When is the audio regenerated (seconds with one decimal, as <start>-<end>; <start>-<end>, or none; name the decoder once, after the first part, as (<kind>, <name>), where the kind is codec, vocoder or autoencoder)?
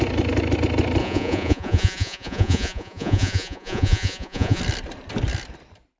1.0-4.6 (vocoder, Vocos)